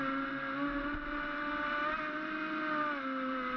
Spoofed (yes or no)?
no